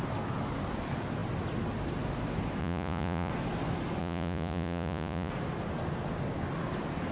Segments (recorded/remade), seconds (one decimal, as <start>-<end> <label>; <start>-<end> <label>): 0.0-2.6 recorded; 2.6-3.3 remade; 3.3-4.0 recorded; 4.0-5.3 remade; 5.3-7.1 recorded